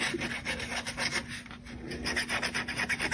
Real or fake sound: real